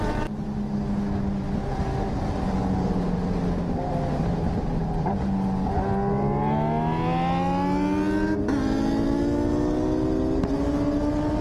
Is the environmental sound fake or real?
real